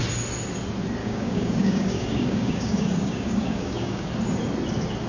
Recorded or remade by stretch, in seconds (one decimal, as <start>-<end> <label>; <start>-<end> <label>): 0.0-1.0 recorded; 1.0-4.1 remade; 4.1-5.1 recorded